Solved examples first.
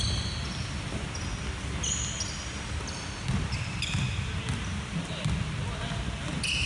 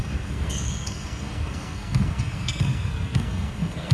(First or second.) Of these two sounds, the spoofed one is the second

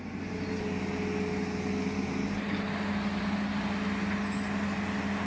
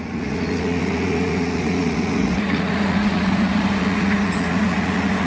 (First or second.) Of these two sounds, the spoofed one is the second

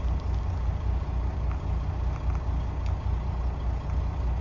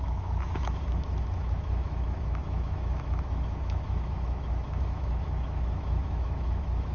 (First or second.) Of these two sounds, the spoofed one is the second